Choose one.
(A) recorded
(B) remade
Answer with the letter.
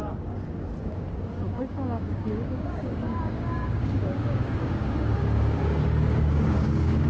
B